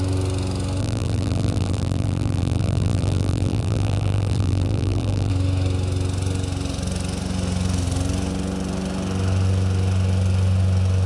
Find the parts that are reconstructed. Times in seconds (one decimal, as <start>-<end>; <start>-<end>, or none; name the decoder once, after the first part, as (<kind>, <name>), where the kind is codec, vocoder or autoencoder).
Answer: 0.8-5.3 (vocoder, BigVGAN v2)